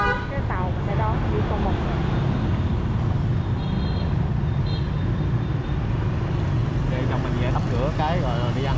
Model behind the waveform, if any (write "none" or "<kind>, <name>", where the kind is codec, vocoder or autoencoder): none